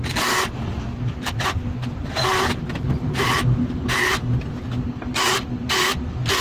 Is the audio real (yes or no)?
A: yes